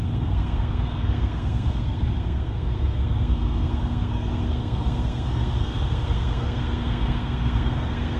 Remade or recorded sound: remade